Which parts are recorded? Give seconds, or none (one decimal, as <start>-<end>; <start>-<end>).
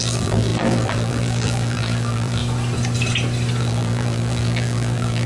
2.4-3.6